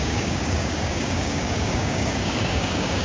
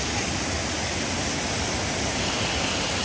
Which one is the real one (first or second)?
second